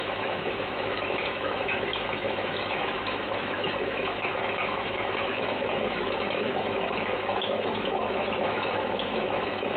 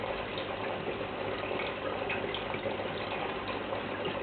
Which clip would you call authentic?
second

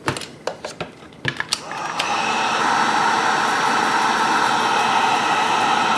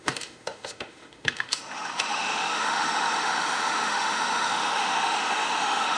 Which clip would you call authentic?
first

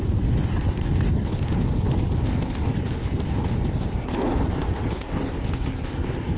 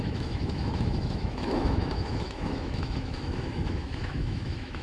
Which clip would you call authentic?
first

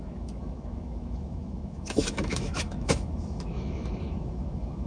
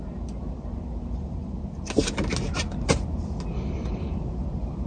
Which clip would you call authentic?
second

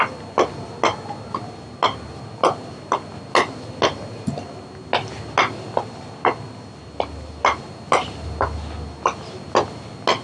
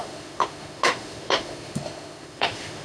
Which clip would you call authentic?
first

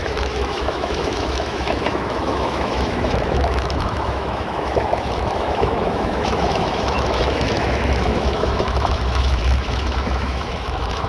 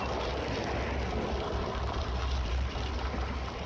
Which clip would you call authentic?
second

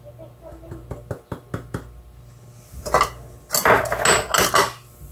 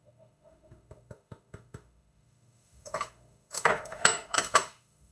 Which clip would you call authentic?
first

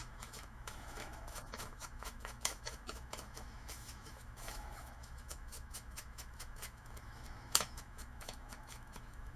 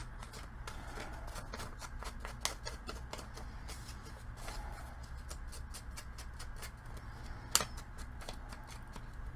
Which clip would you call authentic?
second